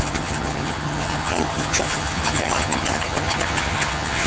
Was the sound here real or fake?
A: fake